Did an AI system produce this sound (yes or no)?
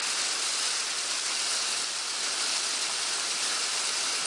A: no